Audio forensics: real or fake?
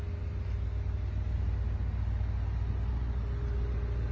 real